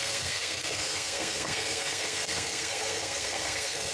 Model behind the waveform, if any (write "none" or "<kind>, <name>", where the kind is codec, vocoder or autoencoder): codec, SNAC